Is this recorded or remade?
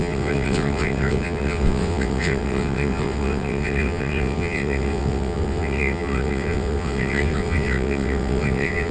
remade